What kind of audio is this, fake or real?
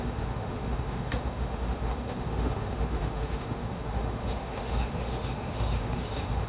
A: fake